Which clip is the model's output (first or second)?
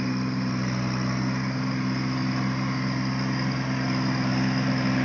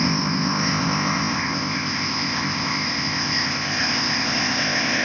second